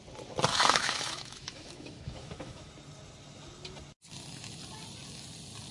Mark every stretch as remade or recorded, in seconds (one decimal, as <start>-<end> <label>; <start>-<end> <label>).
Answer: 0.0-0.5 recorded; 0.5-2.7 remade; 2.7-5.7 recorded